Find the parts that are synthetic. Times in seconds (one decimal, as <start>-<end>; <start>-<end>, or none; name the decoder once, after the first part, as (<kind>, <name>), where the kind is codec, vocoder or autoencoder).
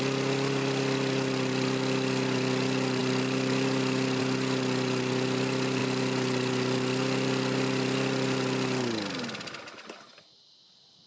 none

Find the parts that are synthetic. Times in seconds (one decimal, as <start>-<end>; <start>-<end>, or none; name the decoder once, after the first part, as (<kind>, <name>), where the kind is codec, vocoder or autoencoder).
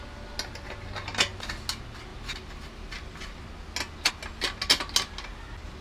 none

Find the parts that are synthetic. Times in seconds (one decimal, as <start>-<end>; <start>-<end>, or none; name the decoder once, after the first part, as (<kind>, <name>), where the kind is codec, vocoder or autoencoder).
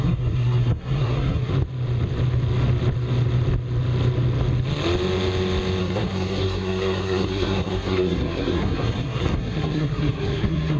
0.0-1.5 (codec, SNAC); 5.8-10.8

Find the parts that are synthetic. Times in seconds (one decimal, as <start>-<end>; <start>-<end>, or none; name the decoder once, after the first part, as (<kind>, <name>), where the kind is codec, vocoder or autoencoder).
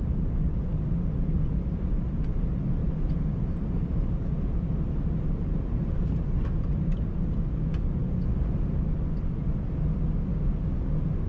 2.8-7.5 (vocoder, BigVGAN v2)